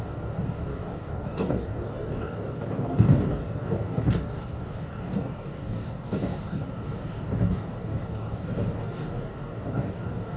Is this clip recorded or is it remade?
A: remade